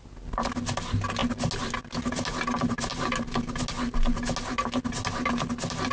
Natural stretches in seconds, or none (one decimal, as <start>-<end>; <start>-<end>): 0.0-5.9